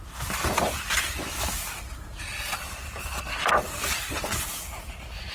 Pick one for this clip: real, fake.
real